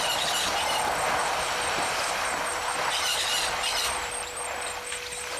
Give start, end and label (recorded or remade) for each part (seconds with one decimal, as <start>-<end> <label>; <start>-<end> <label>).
0.0-1.2 recorded; 1.2-4.4 remade; 4.4-5.4 recorded